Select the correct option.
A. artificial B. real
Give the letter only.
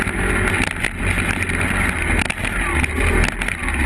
B